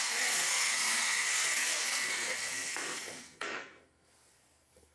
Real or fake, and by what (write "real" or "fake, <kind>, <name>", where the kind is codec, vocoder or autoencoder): fake, codec, SNAC